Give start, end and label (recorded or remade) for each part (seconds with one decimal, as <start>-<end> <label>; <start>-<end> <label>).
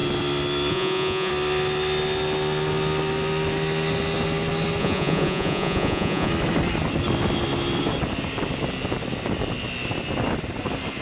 0.0-0.7 recorded; 0.7-1.3 remade; 1.3-4.8 recorded; 4.8-6.3 remade; 6.3-11.0 recorded